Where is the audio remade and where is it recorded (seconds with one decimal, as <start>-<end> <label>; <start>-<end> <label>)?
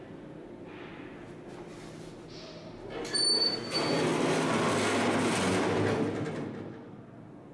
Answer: 0.0-7.5 recorded